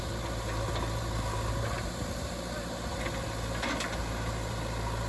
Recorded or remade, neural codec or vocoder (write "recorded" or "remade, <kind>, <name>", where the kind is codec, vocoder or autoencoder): recorded